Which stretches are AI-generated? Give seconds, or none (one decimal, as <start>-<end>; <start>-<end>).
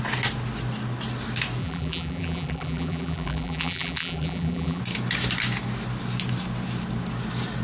1.6-4.8